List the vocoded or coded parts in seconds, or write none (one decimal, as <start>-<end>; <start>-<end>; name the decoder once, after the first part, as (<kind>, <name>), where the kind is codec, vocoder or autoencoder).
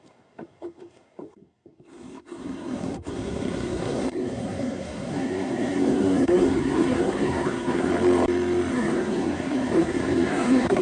0.0-7.9 (codec, SNAC); 8.7-10.8